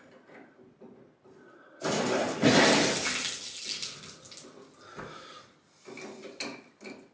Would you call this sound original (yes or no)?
yes